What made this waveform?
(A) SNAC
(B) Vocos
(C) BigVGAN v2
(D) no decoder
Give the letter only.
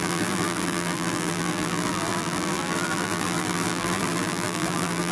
C